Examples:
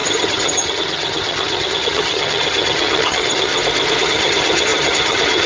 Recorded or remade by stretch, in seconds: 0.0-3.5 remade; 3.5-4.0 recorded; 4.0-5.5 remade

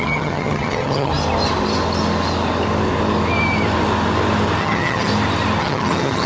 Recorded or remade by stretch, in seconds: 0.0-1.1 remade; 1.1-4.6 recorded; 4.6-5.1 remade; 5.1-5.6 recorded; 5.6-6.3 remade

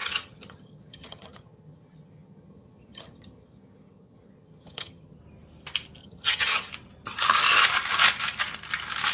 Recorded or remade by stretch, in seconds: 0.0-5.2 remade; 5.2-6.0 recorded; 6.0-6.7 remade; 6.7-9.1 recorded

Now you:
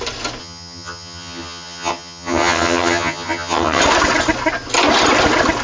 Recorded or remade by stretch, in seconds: 0.0-0.4 recorded; 0.4-3.8 remade; 3.8-5.6 recorded

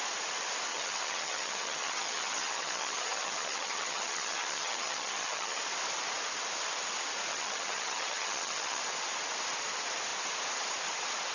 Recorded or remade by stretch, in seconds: 0.0-0.7 recorded; 0.7-5.6 remade; 5.6-7.3 recorded; 7.3-8.8 remade; 8.8-11.3 recorded

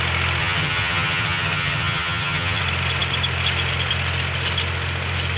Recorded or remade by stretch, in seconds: 0.0-0.4 recorded; 0.4-2.6 remade; 2.6-5.4 recorded